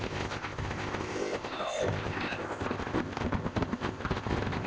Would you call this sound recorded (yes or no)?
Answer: no